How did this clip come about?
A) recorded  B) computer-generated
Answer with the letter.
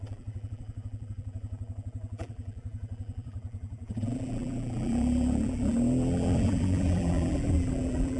B